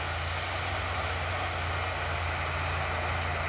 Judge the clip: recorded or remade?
recorded